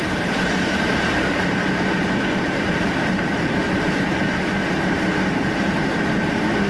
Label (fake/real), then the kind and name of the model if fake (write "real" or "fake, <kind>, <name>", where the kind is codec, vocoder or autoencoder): fake, vocoder, BigVGAN v2